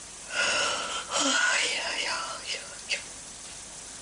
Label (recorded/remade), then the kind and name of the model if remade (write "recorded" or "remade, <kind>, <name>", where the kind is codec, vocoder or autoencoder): recorded